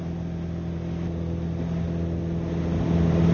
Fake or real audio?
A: real